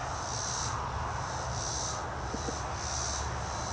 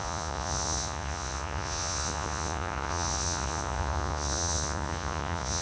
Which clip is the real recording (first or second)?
first